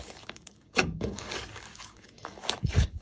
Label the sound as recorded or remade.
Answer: remade